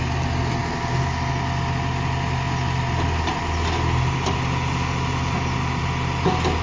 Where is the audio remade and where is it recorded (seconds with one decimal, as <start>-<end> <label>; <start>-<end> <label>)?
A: 0.0-6.6 recorded